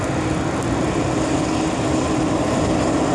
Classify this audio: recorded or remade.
recorded